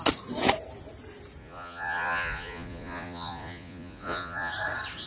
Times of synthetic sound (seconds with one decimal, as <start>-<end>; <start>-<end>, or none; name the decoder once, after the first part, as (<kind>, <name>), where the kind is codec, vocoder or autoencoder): 1.4-4.5 (vocoder, Vocos)